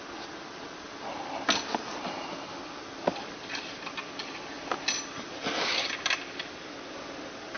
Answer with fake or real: real